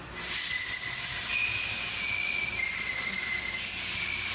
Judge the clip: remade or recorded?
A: recorded